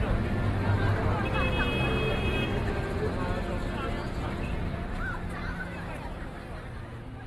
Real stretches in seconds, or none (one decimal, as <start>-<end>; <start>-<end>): 0.0-4.0; 4.6-7.3